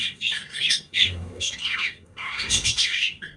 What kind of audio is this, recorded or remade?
remade